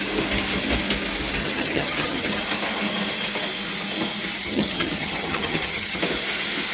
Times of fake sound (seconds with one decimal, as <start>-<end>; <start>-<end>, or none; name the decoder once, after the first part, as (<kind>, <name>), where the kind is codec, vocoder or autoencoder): 1.4-2.4 (vocoder, HiFi-GAN); 4.4-6.0